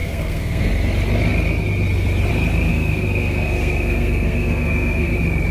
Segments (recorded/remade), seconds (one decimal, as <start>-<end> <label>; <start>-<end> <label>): 0.0-0.7 remade; 0.7-2.7 recorded; 2.7-5.1 remade; 5.1-5.5 recorded